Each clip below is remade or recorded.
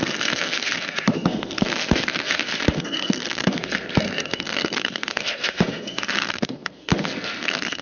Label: remade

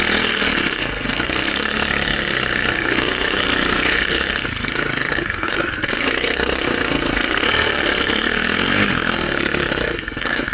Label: remade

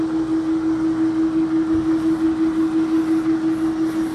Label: recorded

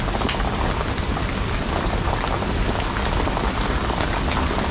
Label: recorded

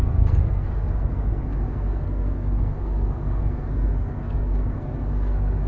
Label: remade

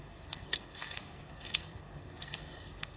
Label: remade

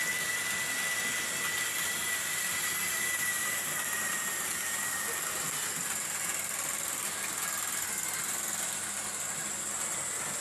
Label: recorded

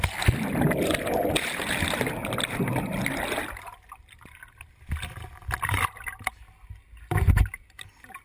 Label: recorded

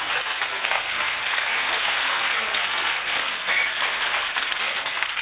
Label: remade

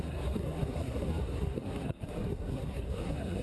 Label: remade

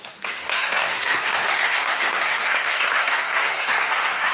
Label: remade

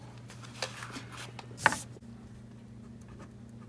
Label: recorded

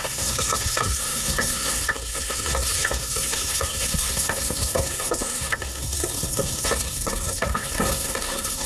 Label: remade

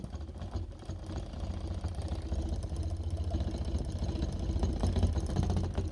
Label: recorded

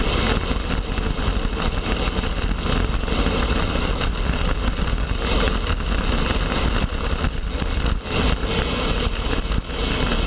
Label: recorded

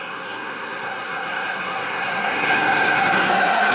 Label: remade